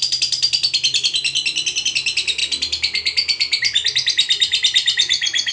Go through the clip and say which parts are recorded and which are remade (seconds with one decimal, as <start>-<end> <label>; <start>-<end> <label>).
0.0-5.5 recorded